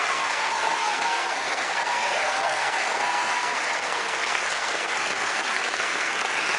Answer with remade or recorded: remade